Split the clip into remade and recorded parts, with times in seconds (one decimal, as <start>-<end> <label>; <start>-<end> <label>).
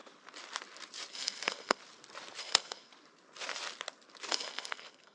0.0-1.1 recorded; 1.1-1.8 remade; 1.8-2.4 recorded; 2.4-2.9 remade; 2.9-4.3 recorded; 4.3-5.1 remade